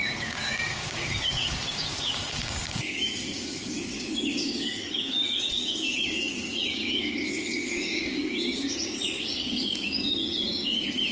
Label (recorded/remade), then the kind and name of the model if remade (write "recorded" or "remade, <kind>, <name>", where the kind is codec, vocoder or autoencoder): remade, codec, DAC